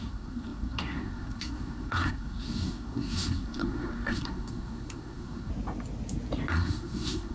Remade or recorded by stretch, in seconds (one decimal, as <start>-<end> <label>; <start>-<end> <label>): 0.0-5.5 remade; 5.5-6.5 recorded; 6.5-7.3 remade